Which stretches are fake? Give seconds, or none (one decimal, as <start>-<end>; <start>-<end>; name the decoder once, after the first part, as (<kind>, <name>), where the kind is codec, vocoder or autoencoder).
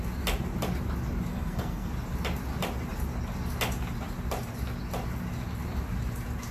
1.3-1.9 (codec, SNAC)